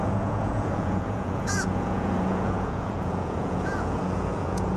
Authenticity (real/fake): fake